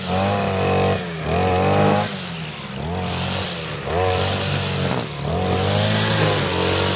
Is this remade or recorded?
recorded